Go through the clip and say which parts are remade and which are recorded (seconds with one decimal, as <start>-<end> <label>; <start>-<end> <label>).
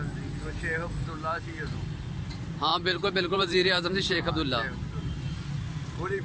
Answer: 0.0-2.7 recorded; 2.7-4.3 remade; 4.3-6.2 recorded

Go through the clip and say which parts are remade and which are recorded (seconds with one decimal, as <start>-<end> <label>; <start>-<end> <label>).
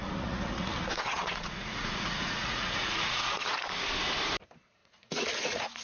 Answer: 0.0-3.5 remade; 3.5-4.8 recorded; 4.8-5.8 remade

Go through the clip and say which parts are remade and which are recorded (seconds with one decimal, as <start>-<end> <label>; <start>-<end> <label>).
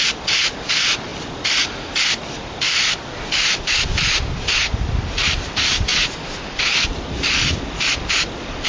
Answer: 0.0-5.9 remade; 5.9-6.5 recorded; 6.5-8.7 remade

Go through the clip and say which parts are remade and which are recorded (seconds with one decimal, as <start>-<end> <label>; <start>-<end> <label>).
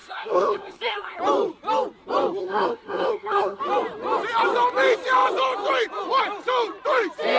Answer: 0.0-1.2 remade; 1.2-2.4 recorded; 2.4-3.6 remade; 3.6-7.4 recorded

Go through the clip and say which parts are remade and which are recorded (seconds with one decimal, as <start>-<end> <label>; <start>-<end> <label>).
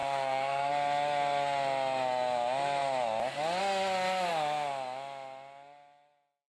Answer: 0.0-0.7 remade; 0.7-6.5 recorded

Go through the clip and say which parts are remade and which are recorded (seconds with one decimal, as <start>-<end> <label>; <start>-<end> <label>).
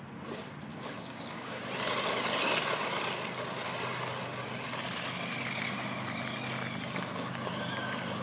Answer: 0.0-0.7 recorded; 0.7-1.6 remade; 1.6-8.2 recorded